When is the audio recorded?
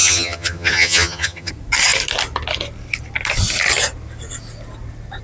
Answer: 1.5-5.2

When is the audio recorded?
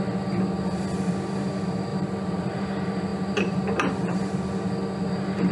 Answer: 0.0-1.9; 2.7-3.1; 3.6-5.5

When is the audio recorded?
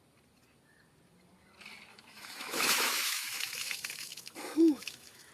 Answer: 0.0-1.9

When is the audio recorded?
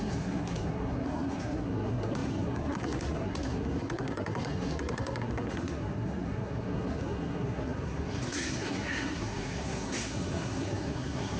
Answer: none